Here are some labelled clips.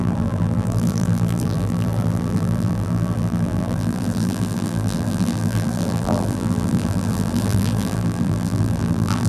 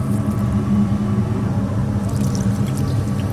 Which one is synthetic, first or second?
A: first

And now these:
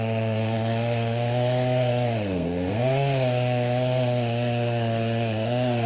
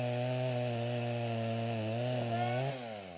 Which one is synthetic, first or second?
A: first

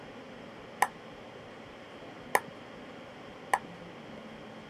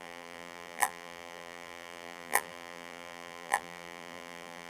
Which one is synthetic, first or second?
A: second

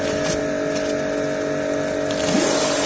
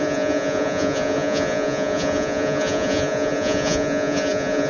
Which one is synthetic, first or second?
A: second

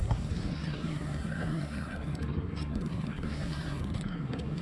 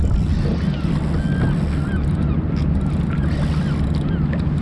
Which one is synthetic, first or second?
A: first